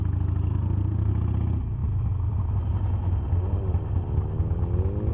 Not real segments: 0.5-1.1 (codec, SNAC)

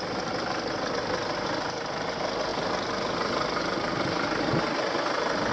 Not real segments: none

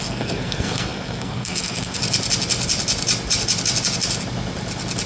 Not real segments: 0.0-2.0 (codec, SNAC)

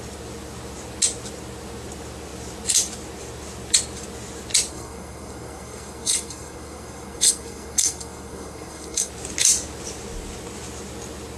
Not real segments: 4.7-9.1 (codec, SNAC)

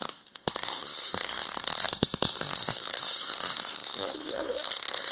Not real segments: 0.0-5.1 (codec, SNAC)

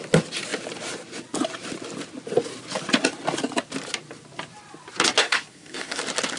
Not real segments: 5.2-6.0 (codec, SNAC)

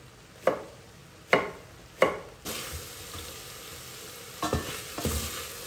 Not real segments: none

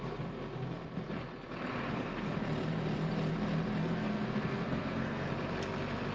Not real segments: 1.7-2.3 (codec, SNAC); 3.8-5.3